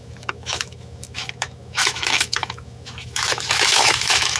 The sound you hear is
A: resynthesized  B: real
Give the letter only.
A